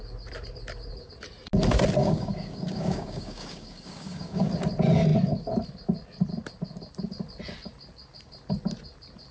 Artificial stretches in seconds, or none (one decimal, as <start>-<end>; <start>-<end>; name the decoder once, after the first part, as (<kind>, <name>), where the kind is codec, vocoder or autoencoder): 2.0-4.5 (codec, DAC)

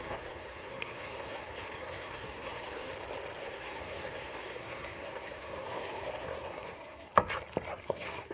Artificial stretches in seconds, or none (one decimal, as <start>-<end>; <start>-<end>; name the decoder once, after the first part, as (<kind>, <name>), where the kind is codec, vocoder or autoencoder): 0.0-2.9 (codec, SNAC); 3.4-7.1; 7.7-8.3

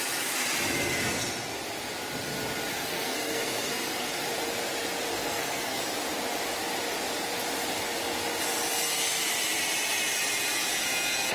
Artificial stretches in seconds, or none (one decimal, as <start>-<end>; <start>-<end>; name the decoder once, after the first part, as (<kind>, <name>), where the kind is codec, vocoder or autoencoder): 2.7-4.2 (codec, SNAC); 5.1-5.8